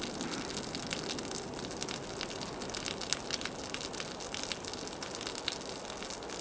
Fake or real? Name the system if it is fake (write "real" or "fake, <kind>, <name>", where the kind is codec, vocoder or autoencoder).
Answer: real